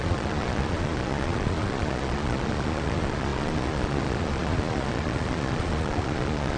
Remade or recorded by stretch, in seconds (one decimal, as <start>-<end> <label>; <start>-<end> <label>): 0.0-6.6 remade